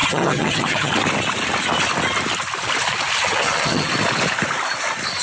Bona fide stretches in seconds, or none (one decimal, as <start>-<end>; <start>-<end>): 0.9-3.2; 3.9-5.2